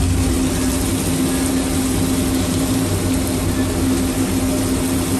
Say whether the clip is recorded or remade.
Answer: recorded